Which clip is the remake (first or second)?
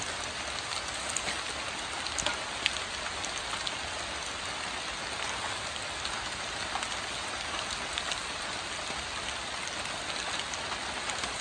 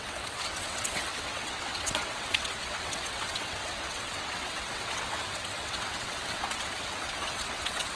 second